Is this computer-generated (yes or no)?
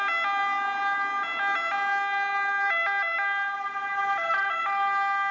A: no